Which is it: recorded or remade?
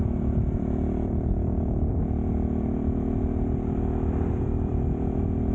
remade